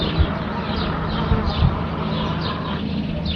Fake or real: real